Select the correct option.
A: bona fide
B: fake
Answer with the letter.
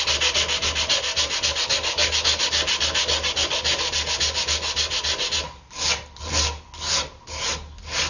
A